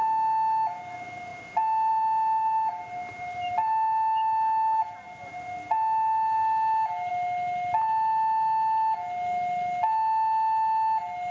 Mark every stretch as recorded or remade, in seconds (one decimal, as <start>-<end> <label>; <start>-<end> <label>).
0.0-11.3 recorded

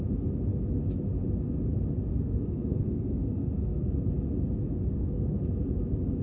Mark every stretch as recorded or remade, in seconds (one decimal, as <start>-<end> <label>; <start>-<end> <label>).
0.0-2.1 recorded; 2.1-3.9 remade; 3.9-4.9 recorded; 4.9-5.4 remade; 5.4-6.2 recorded

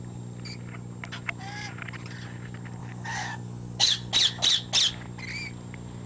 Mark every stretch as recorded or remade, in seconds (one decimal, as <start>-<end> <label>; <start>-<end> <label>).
0.0-2.8 recorded; 2.8-4.1 remade; 4.1-6.1 recorded

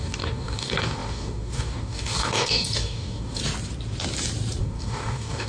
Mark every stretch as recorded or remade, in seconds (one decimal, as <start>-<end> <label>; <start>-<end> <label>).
0.0-3.4 remade; 3.4-4.6 recorded; 4.6-5.5 remade

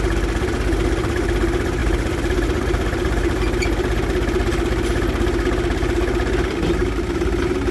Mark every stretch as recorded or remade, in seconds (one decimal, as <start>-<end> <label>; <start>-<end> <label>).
0.0-1.8 recorded; 1.8-3.4 remade; 3.4-6.8 recorded; 6.8-7.7 remade

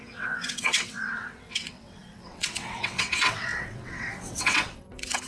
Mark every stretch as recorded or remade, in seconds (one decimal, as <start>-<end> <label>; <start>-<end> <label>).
0.0-5.3 remade